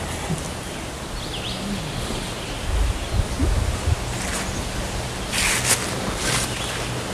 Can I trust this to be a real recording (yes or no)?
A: yes